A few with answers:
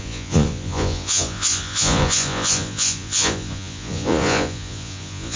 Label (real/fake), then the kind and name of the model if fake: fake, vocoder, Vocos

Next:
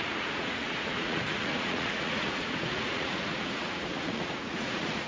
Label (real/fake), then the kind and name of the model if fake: fake, vocoder, Vocos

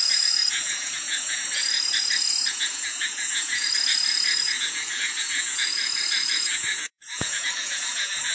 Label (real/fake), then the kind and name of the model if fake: fake, vocoder, Vocos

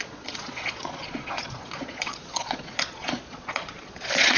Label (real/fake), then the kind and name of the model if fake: fake, vocoder, Vocos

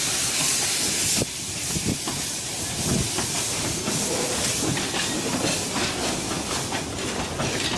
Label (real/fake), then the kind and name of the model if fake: real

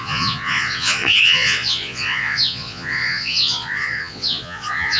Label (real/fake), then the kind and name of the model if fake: fake, vocoder, Vocos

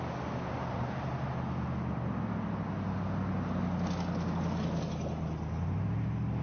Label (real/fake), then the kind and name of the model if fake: real